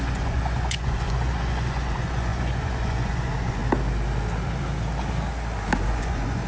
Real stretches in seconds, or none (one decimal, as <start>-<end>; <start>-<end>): 3.6-5.9